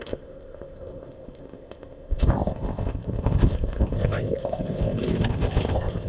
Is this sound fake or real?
fake